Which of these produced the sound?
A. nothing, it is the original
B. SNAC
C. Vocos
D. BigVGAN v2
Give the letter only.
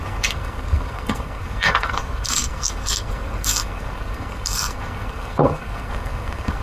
B